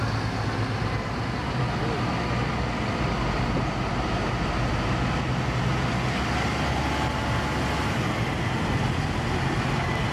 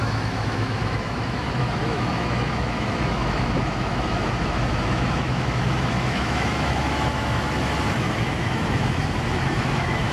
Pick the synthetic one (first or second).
second